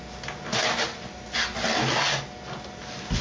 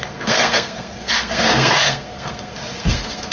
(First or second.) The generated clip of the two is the second